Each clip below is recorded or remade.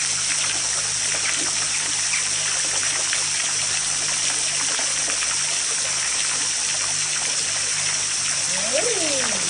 recorded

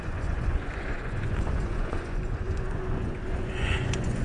remade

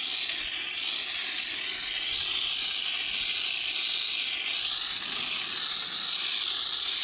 recorded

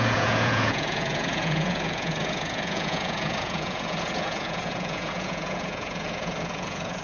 remade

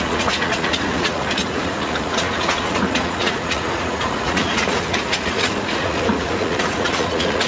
remade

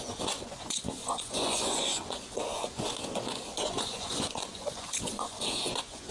remade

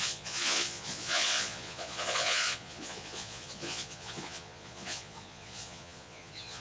remade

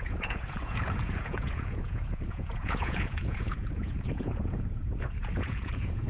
remade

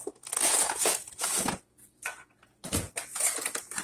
remade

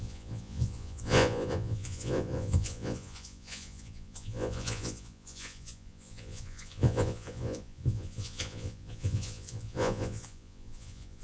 remade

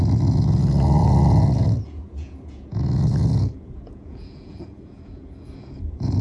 remade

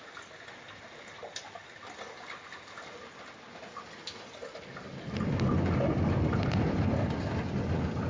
recorded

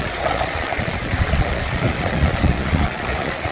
remade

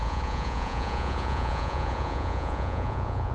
remade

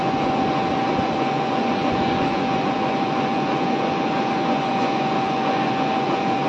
remade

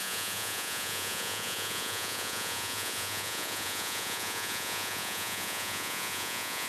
remade